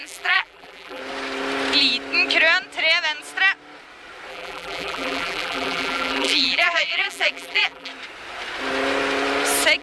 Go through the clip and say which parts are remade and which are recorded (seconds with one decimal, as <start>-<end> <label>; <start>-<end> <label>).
0.0-1.0 remade; 1.0-4.3 recorded; 4.3-7.9 remade; 7.9-9.8 recorded